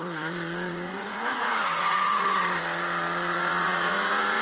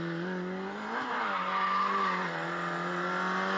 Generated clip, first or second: first